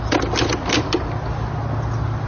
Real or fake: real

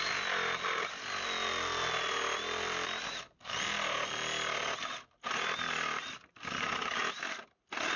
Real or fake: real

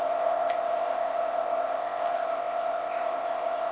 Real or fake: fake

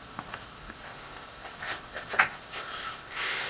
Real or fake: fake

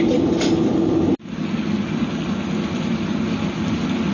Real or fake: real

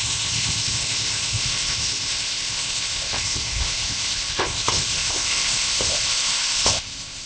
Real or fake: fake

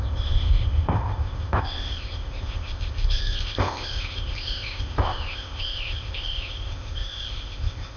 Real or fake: fake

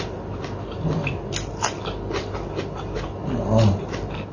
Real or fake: real